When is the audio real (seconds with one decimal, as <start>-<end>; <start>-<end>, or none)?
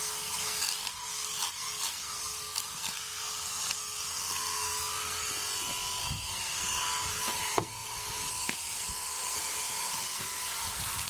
5.3-6.0